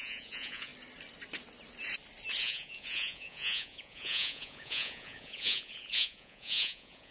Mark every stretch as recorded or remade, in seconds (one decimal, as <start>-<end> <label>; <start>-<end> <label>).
0.0-0.7 remade; 0.7-2.4 recorded; 2.4-7.1 remade